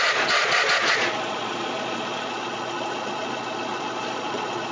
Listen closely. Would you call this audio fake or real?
fake